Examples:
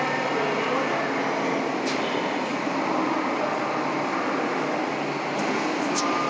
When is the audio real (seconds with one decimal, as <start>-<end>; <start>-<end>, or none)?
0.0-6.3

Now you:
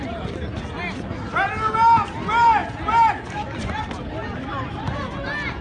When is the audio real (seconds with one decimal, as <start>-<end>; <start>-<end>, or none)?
0.0-5.6

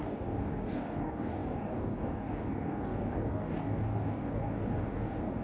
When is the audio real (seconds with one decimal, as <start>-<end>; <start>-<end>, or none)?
none